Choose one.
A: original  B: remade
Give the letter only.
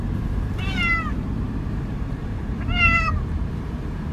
B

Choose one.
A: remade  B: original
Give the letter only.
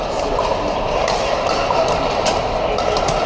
B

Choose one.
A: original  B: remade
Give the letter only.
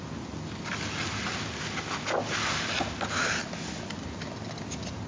A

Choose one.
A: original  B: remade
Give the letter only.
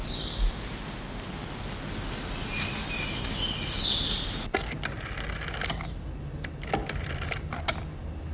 A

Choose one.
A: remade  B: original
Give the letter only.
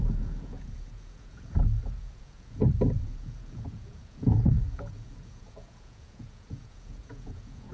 A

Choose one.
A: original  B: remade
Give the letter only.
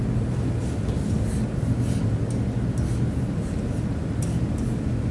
A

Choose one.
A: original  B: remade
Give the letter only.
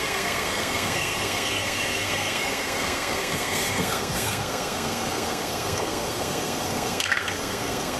B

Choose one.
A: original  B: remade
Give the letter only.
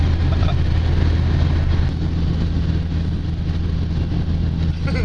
A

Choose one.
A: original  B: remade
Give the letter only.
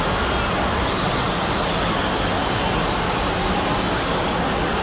A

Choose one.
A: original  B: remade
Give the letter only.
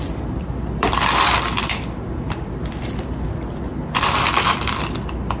A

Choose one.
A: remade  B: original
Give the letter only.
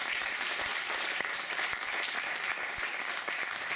A